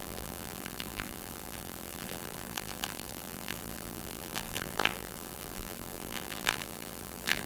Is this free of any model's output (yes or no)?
no